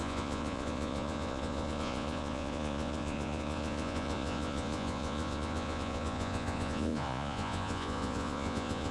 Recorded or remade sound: remade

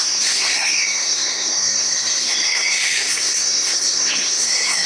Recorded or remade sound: remade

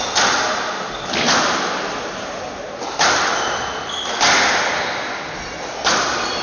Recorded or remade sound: recorded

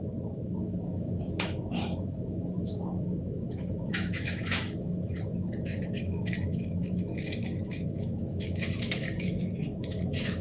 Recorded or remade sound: remade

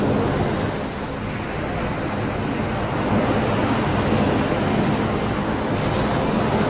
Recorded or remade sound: recorded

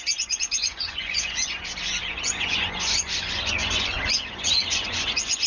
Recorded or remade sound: remade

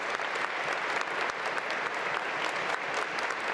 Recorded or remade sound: recorded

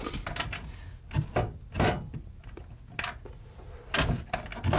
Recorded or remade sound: recorded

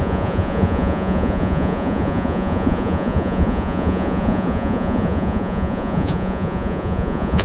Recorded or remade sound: remade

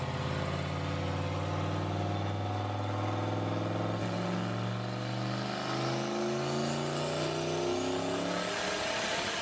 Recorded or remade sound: recorded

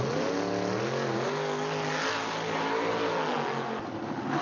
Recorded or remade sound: recorded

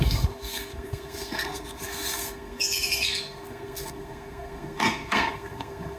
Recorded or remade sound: remade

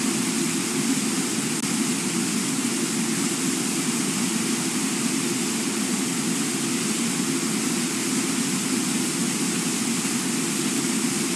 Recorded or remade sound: recorded